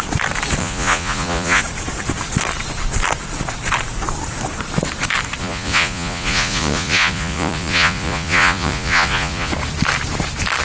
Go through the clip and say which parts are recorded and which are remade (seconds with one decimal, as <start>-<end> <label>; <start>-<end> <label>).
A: 0.0-0.6 recorded; 0.6-1.6 remade; 1.6-5.4 recorded; 5.4-9.5 remade; 9.5-10.6 recorded

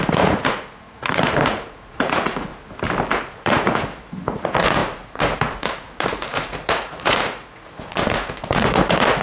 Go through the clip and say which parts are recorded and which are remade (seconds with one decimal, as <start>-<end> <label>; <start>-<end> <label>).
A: 0.0-2.5 remade; 2.5-3.2 recorded; 3.2-9.2 remade

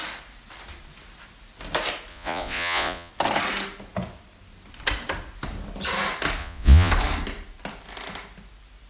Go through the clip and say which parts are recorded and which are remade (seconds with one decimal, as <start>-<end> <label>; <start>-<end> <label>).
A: 0.0-2.1 recorded; 2.1-3.1 remade; 3.1-6.4 recorded; 6.4-6.9 remade; 6.9-8.9 recorded

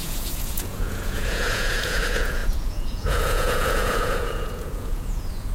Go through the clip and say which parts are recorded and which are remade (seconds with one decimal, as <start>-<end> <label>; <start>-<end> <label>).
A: 0.0-5.5 remade